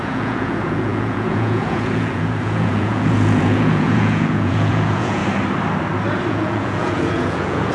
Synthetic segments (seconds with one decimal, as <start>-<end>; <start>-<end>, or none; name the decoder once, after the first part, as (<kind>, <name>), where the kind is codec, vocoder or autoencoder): 0.0-5.2 (vocoder, Vocos); 6.3-7.7